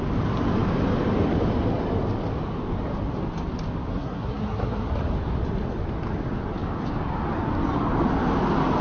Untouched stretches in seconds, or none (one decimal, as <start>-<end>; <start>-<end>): 0.0-3.9; 4.9-8.8